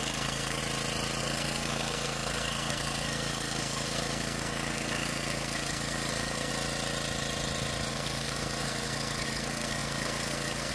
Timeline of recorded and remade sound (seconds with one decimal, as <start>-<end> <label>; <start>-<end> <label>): 0.0-0.6 remade; 0.6-1.2 recorded; 1.2-6.5 remade; 6.5-7.9 recorded; 7.9-10.7 remade